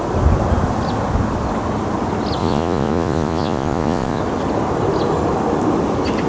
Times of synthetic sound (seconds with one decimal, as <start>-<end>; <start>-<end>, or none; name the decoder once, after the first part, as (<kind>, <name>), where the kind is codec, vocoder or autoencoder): 2.4-4.2 (vocoder, Vocos)